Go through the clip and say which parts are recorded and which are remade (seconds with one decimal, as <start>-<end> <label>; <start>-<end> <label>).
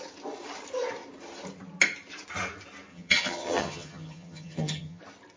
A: 0.0-2.9 recorded; 2.9-5.0 remade; 5.0-5.4 recorded